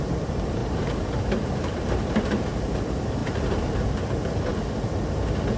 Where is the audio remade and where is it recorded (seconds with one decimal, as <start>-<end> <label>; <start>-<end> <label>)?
0.0-0.6 recorded; 0.6-2.8 remade; 2.8-5.6 recorded